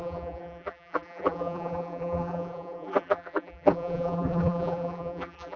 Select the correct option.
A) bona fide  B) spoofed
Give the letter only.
B